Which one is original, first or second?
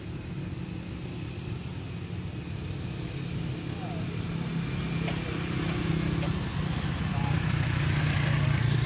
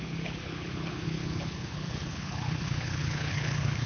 first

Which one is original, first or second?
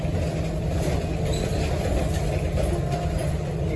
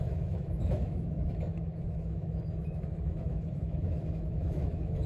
first